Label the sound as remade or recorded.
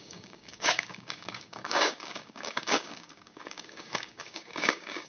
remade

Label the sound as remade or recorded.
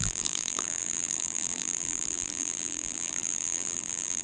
remade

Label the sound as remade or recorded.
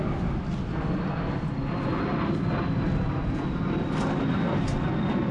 recorded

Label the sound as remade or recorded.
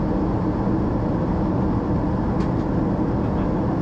recorded